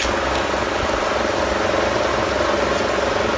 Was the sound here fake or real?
real